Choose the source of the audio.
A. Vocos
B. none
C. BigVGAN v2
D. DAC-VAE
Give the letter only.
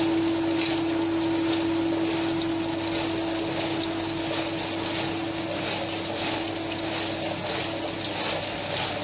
B